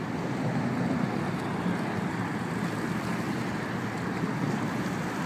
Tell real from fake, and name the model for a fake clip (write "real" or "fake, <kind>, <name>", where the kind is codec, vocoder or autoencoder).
real